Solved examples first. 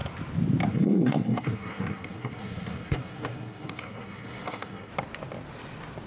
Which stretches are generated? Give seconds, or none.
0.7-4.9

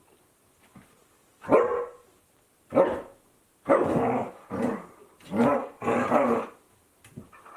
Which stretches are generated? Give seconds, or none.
none

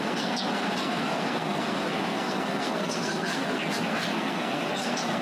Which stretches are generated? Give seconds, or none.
0.0-5.2

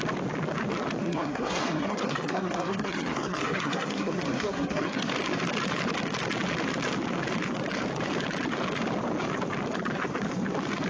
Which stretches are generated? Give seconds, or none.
1.0-5.1

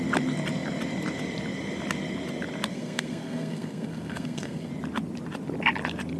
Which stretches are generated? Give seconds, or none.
2.7-4.7

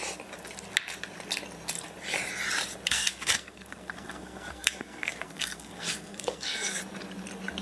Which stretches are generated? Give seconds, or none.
2.9-6.8

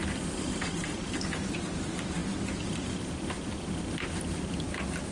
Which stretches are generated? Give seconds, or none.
none

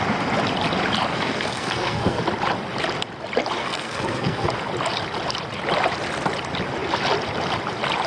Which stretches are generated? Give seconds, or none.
1.1-2.2; 3.6-4.5